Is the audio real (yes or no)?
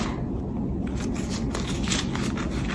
yes